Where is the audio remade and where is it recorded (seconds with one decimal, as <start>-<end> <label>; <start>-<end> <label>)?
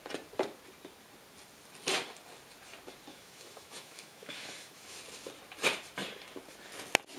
0.0-3.1 recorded; 3.1-5.0 remade; 5.0-7.2 recorded